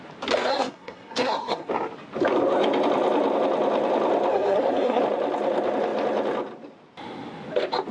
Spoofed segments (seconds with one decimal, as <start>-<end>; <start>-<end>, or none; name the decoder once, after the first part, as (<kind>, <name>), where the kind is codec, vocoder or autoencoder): 0.5-1.7 (codec, SNAC); 4.3-5.0